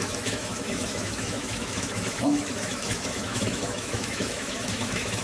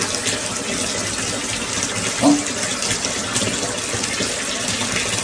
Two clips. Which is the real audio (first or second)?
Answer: second